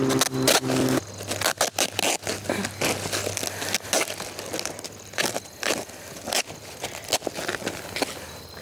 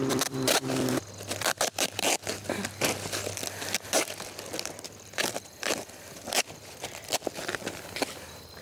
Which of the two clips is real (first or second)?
first